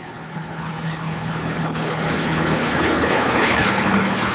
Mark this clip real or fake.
fake